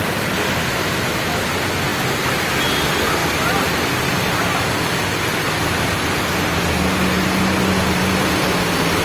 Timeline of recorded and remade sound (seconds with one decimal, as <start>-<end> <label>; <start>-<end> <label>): 0.0-9.0 recorded